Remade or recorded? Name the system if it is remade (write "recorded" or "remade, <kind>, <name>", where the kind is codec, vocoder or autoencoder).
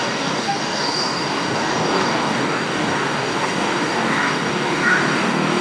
remade, codec, DAC